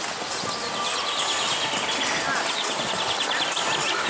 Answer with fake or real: real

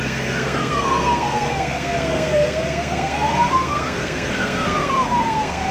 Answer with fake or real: fake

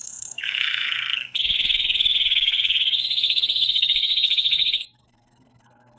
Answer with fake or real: fake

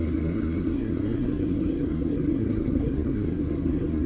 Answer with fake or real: fake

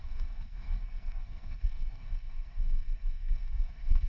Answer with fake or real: fake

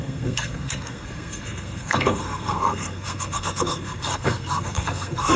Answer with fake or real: fake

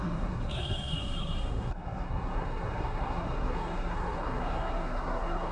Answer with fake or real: fake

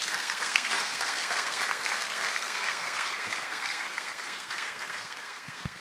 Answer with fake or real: fake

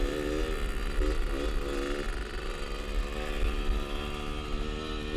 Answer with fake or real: real